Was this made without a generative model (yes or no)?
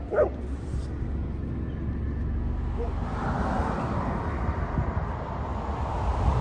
yes